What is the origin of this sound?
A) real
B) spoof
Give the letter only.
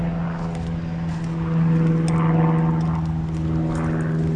A